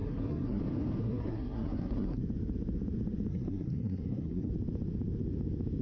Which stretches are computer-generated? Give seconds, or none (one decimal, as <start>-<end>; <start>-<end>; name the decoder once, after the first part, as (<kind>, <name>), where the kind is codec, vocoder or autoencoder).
0.0-0.6 (codec, SNAC); 1.0-2.2; 3.3-4.5